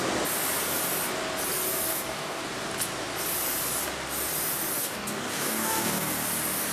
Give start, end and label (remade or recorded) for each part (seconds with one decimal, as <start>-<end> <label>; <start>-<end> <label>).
0.0-1.9 recorded; 1.9-2.4 remade; 2.4-4.8 recorded; 4.8-6.1 remade; 6.1-6.7 recorded